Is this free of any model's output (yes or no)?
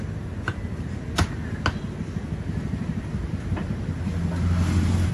yes